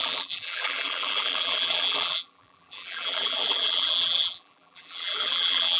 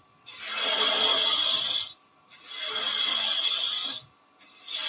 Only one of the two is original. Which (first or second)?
second